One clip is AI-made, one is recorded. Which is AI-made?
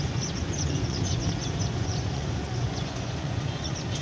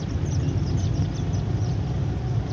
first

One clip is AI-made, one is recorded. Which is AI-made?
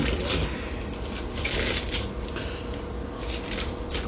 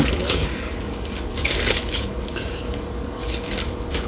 second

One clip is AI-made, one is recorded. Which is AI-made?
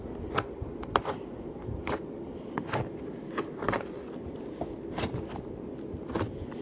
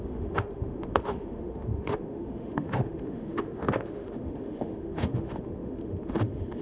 second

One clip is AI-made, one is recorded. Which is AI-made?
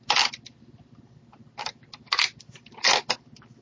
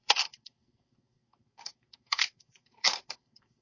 second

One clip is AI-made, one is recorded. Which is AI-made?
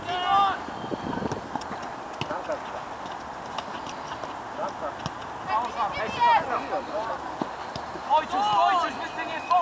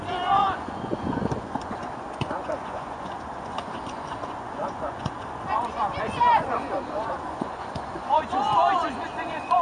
second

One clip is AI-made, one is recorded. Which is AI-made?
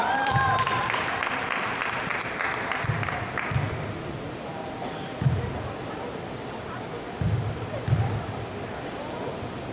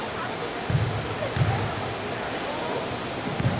first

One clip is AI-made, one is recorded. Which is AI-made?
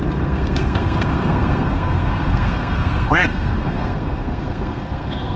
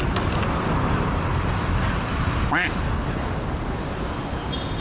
first